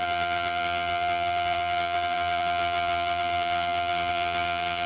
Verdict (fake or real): fake